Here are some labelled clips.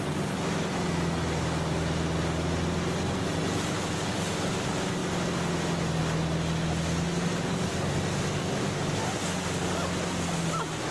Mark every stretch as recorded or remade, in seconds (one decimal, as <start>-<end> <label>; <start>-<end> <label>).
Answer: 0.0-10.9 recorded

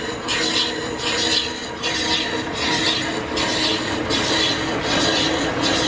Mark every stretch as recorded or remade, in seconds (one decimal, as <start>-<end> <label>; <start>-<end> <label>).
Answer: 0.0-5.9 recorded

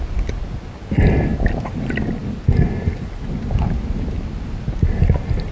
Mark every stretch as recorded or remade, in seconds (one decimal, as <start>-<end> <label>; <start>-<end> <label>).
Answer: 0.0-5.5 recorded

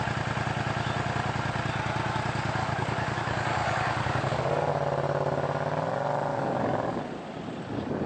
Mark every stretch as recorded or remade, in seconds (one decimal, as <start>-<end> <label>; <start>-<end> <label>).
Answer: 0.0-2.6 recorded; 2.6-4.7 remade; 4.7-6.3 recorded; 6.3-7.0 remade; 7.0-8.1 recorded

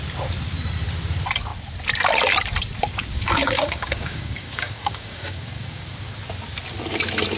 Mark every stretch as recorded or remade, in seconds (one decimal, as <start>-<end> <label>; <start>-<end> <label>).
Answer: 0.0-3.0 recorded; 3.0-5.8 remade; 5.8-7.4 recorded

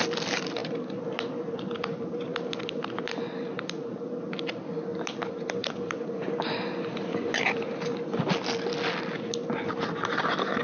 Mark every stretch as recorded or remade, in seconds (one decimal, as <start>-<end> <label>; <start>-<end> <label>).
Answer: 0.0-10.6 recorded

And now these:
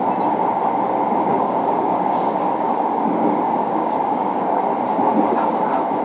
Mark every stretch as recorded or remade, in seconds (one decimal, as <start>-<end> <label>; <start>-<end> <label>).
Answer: 0.0-1.3 recorded; 1.3-4.6 remade; 4.6-6.0 recorded

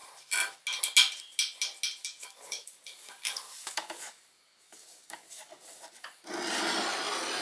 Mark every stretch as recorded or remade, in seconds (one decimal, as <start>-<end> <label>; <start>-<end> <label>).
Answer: 0.0-2.0 recorded; 2.0-6.2 remade; 6.2-7.4 recorded